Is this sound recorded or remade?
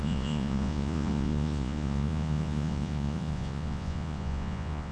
remade